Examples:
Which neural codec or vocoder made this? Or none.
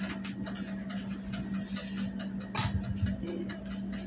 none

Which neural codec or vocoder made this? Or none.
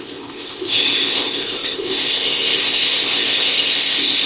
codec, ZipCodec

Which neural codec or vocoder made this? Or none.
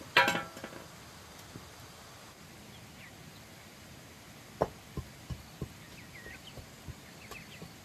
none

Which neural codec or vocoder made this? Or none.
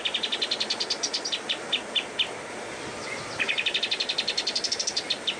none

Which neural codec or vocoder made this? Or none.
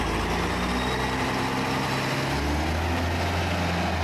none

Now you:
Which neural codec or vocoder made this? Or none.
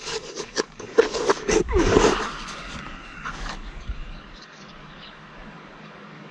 codec, DAC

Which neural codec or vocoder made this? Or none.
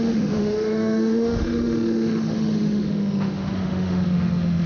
autoencoder, DAC-VAE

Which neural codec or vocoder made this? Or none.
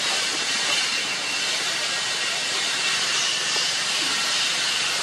vocoder, BigVGAN v2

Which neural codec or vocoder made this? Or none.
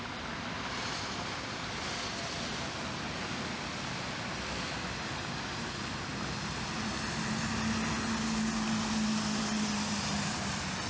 none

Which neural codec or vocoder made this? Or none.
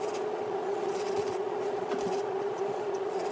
vocoder, Vocos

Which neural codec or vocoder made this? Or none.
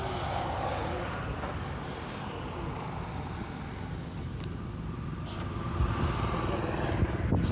none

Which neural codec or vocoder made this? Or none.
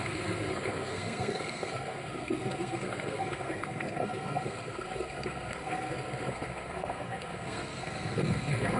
codec, SNAC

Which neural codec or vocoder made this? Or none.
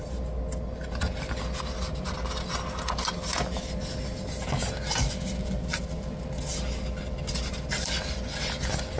none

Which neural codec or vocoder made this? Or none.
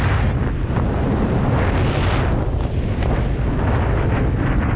none